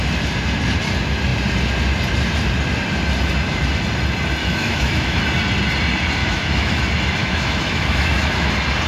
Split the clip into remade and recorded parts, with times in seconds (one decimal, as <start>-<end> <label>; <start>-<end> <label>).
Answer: 0.0-4.4 recorded; 4.4-5.2 remade; 5.2-6.2 recorded; 6.2-6.8 remade; 6.8-7.2 recorded; 7.2-8.5 remade; 8.5-8.9 recorded